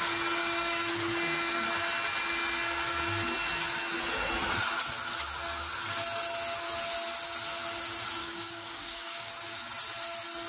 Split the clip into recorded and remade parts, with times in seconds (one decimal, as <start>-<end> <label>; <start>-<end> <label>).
0.0-0.4 recorded; 0.4-0.9 remade; 0.9-8.2 recorded; 8.2-9.3 remade; 9.3-10.5 recorded